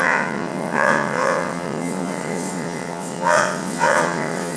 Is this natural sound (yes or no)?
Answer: no